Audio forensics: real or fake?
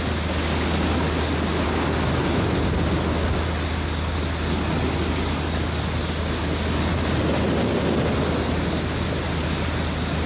real